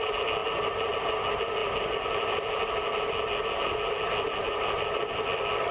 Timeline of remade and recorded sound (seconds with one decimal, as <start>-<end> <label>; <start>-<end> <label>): 0.0-5.7 recorded